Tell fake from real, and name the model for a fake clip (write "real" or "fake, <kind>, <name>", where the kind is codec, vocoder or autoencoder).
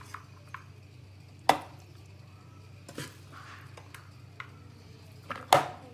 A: real